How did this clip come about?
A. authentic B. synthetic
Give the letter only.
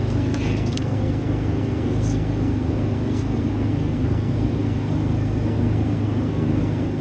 B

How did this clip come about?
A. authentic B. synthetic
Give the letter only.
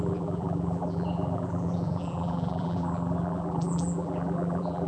B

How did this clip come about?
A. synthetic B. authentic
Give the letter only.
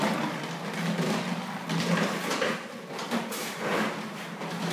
B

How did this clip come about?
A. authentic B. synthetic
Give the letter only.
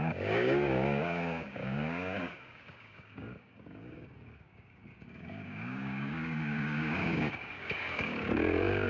B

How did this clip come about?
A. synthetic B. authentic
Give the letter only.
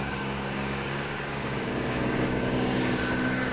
A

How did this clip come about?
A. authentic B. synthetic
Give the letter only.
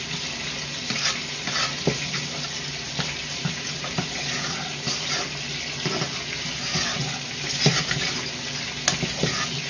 A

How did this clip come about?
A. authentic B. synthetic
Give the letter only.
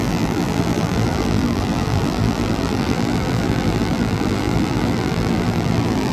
B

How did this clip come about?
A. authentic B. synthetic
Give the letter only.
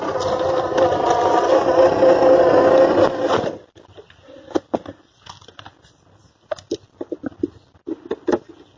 A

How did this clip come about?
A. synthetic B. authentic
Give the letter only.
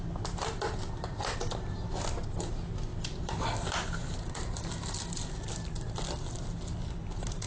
B